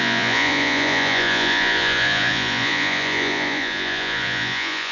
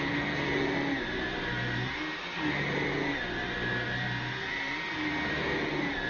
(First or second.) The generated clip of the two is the first